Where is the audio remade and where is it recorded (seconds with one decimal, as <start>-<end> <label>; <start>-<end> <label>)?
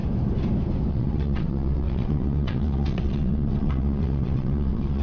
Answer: 0.0-0.9 recorded; 0.9-5.0 remade